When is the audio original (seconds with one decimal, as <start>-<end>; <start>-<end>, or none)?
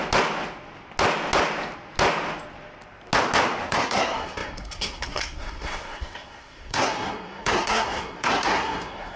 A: 0.0-3.7